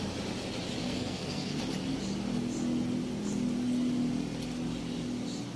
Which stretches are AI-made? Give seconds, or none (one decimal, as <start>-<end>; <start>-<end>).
0.8-1.6